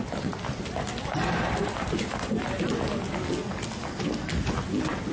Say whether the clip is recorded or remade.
recorded